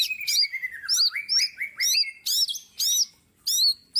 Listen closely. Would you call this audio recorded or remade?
recorded